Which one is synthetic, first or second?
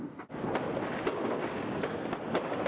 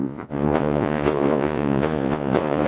second